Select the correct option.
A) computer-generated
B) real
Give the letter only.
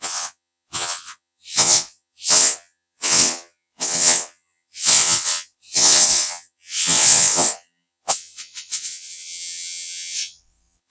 A